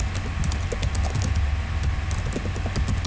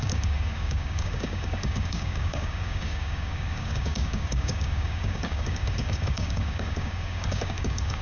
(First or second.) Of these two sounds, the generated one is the second